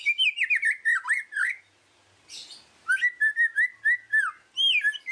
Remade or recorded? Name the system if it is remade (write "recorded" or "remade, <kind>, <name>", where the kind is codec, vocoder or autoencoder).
recorded